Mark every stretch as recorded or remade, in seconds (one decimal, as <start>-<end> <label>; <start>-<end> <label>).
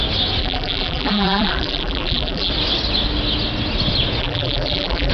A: 0.0-0.4 recorded; 0.4-2.5 remade; 2.5-4.2 recorded; 4.2-5.1 remade